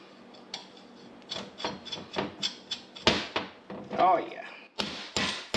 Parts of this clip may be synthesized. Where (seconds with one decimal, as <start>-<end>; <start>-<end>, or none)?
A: none